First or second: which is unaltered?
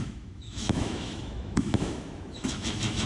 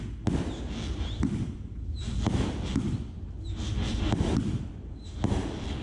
second